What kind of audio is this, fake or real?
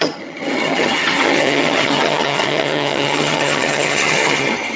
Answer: fake